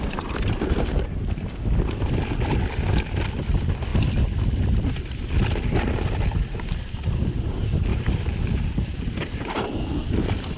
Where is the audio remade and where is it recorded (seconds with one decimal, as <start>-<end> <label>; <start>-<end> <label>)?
0.0-7.9 recorded; 7.9-9.6 remade; 9.6-10.6 recorded